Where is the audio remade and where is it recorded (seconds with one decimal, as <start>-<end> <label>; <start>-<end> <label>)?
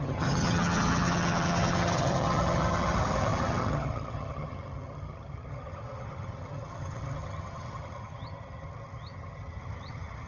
0.0-10.3 remade